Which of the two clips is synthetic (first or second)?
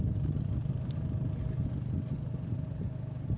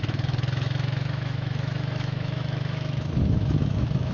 second